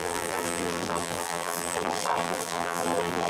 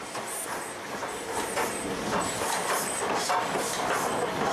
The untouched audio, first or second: second